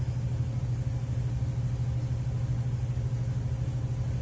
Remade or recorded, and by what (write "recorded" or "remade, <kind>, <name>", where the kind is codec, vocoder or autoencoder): recorded